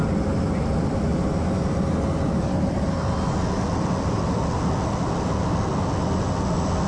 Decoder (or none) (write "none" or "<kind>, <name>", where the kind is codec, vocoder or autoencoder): none